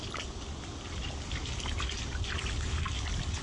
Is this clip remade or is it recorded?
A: recorded